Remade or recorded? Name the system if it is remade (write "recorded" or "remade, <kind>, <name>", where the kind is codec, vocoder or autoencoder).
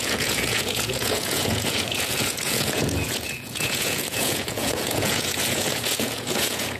remade, vocoder, Vocos